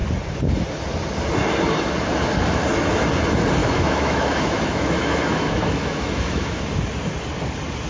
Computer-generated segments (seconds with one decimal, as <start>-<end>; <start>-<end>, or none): 3.6-6.6